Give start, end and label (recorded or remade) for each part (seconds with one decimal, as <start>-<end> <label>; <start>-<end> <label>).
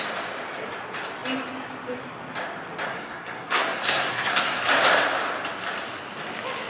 0.0-2.9 recorded; 2.9-4.6 remade; 4.6-6.7 recorded